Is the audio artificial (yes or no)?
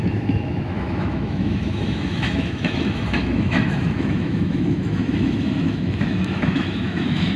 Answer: yes